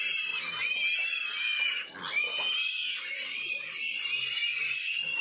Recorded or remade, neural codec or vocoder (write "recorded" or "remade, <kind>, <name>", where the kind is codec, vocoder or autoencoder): recorded